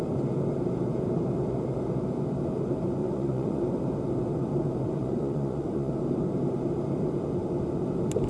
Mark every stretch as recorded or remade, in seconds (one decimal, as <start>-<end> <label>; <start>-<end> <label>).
0.0-3.0 recorded; 3.0-3.6 remade; 3.6-5.0 recorded; 5.0-5.9 remade; 5.9-8.3 recorded